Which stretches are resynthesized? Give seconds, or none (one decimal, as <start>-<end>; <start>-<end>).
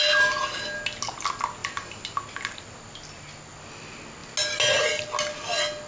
none